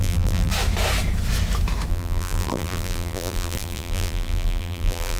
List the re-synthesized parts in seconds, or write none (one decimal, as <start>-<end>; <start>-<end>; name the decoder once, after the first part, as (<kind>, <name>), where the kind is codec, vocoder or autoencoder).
0.0-0.5 (vocoder, BigVGAN v2); 1.9-5.2